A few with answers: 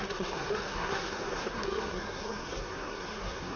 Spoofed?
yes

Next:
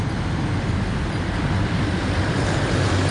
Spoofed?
no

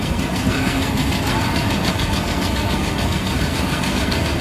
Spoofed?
yes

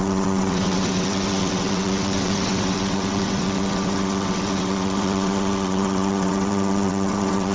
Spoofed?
yes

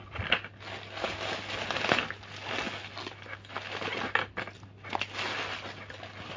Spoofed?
no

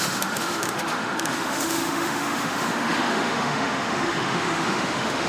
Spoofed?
yes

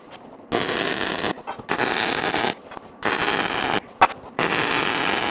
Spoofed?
no